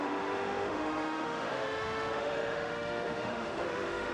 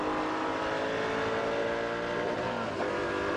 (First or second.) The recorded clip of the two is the second